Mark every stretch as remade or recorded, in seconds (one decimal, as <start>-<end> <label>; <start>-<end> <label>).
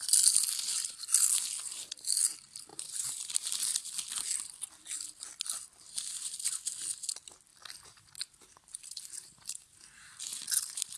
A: 0.0-2.7 recorded; 2.7-3.3 remade; 3.3-7.5 recorded; 7.5-10.2 remade; 10.2-11.0 recorded